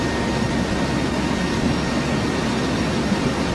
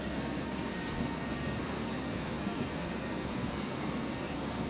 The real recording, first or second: first